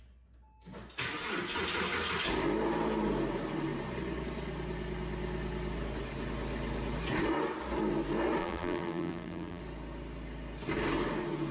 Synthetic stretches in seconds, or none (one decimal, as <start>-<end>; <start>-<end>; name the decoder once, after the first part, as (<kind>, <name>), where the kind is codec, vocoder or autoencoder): 8.4-9.6 (vocoder, BigVGAN v2)